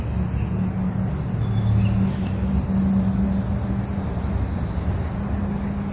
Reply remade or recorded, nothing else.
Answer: recorded